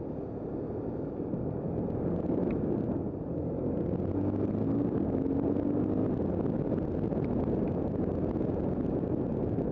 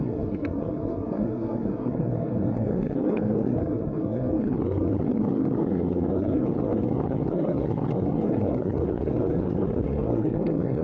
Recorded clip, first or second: first